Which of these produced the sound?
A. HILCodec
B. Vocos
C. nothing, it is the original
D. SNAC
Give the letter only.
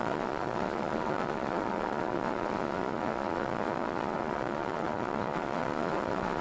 B